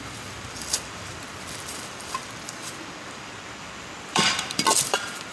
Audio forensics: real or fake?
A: fake